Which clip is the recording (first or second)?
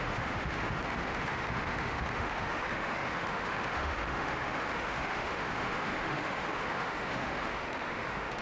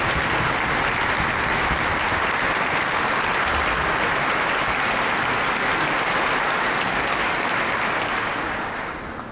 second